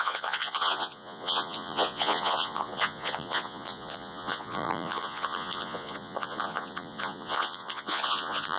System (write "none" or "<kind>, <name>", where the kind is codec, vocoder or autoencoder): vocoder, Vocos